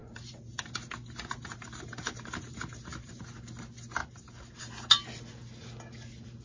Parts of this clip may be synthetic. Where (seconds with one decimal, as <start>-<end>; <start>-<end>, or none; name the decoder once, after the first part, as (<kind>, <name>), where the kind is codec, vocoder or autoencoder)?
0.0-3.2 (vocoder, BigVGAN v2); 4.0-4.6